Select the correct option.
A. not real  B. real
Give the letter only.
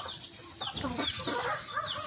B